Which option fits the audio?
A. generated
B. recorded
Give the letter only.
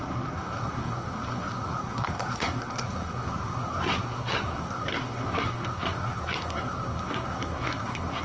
A